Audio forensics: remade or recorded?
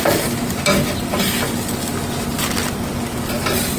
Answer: recorded